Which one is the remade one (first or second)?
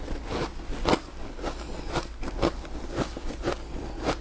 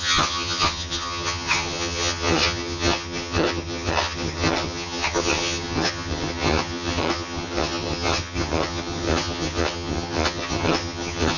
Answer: second